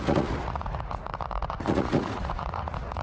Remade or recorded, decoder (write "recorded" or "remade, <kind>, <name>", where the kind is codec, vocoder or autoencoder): remade, vocoder, Vocos